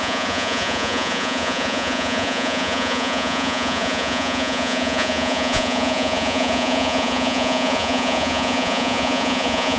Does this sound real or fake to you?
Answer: fake